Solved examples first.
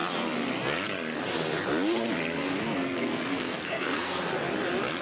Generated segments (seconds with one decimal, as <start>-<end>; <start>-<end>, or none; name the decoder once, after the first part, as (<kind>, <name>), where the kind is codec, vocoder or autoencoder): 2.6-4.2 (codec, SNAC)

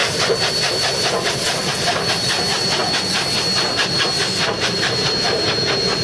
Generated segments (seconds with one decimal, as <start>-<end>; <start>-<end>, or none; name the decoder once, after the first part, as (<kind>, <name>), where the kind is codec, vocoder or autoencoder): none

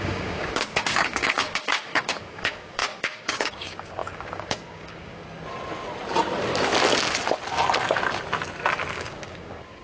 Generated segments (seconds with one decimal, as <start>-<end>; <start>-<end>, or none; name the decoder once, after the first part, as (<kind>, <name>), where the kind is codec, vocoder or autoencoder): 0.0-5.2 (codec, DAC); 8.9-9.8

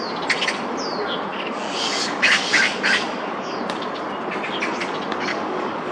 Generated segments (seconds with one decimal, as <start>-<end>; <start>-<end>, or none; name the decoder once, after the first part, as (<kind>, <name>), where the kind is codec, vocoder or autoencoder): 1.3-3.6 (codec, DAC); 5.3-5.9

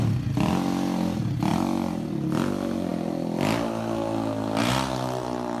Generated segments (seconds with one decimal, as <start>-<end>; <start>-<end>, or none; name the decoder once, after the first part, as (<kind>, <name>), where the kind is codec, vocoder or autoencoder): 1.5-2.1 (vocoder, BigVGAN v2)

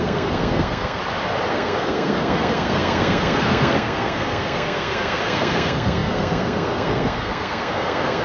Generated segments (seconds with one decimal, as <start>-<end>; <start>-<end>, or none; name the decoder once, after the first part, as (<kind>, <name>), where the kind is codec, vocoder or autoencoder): 0.0-1.0 (codec, SNAC); 1.5-8.2

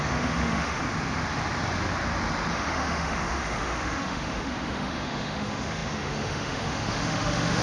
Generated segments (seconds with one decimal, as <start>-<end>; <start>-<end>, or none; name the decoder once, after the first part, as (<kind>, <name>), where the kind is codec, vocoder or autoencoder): 0.0-0.8 (autoencoder, DAC-VAE); 2.5-7.6